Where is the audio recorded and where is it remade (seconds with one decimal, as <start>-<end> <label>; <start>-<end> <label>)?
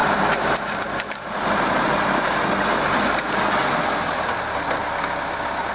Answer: 0.0-3.4 remade; 3.4-5.7 recorded